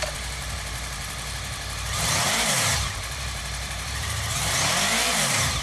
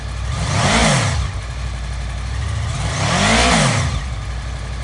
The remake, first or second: first